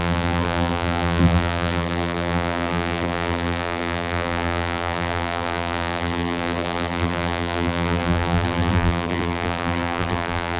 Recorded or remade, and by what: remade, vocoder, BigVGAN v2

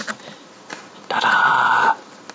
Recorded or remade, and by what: recorded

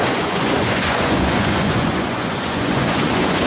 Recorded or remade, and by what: remade, vocoder, Vocos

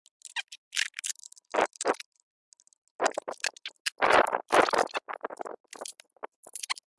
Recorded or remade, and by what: recorded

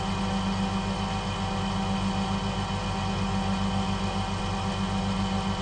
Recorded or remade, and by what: recorded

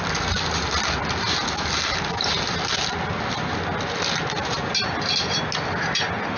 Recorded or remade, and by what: recorded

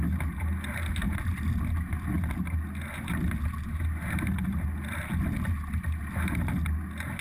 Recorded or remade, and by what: recorded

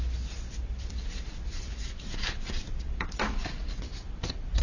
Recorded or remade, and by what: recorded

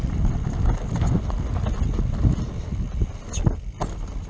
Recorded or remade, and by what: recorded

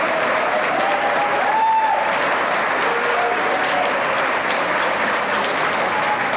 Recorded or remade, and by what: recorded